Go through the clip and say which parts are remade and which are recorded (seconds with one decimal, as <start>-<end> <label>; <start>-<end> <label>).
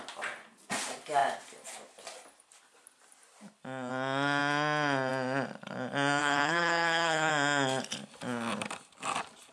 0.0-6.2 recorded; 6.2-7.3 remade; 7.3-9.5 recorded